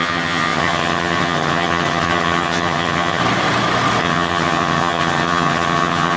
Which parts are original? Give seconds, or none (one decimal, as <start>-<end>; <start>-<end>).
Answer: 3.2-4.0